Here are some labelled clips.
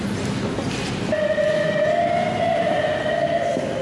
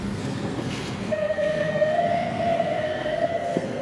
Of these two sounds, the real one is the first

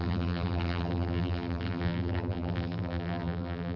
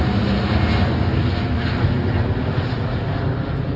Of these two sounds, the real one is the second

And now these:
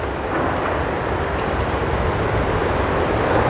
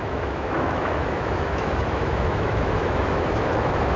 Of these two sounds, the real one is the first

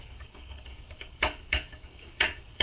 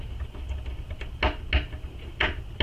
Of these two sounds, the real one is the second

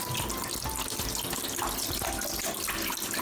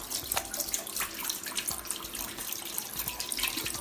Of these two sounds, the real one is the first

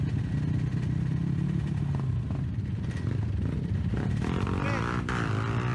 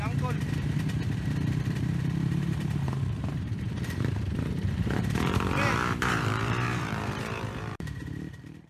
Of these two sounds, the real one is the first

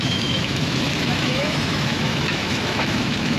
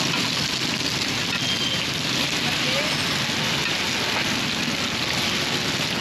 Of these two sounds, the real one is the second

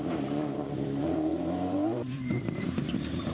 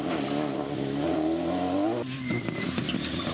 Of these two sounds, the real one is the second